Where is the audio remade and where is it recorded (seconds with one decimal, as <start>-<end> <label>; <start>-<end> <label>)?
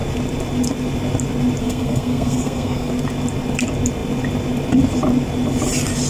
0.0-1.6 recorded; 1.6-2.9 remade; 2.9-6.1 recorded